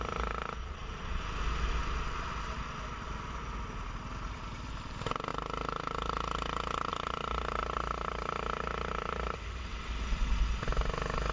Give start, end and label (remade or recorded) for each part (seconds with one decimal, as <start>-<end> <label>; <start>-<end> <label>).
0.0-0.6 recorded; 0.6-1.2 remade; 1.2-11.3 recorded